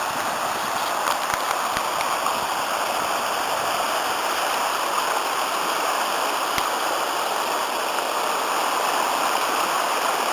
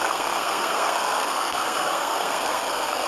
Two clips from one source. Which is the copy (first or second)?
second